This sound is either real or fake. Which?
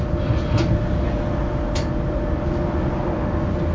real